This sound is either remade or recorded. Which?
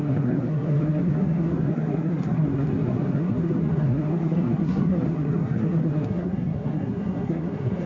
remade